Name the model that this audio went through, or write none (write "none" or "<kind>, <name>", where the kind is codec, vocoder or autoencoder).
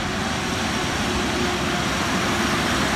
none